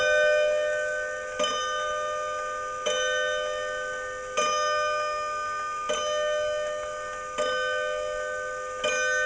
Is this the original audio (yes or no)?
yes